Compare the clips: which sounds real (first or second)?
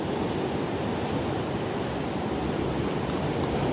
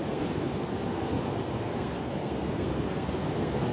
first